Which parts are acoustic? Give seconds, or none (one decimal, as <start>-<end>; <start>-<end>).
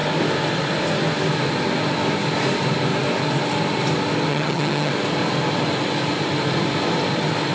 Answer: 0.0-4.3; 4.9-7.5